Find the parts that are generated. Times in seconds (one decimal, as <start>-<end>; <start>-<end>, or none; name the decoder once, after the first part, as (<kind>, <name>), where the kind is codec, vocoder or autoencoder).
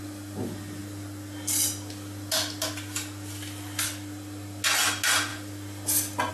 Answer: none